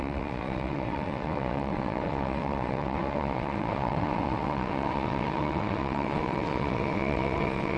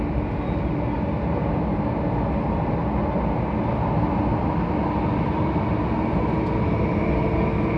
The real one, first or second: second